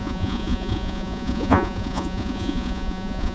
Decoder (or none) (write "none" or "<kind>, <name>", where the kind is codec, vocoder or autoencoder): vocoder, Vocos